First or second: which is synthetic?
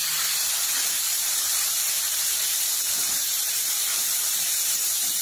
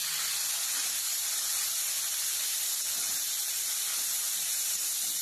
first